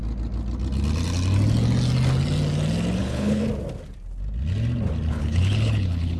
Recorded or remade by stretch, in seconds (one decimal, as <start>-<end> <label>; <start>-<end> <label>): 0.0-3.0 recorded; 3.0-3.4 remade; 3.4-5.1 recorded; 5.1-6.2 remade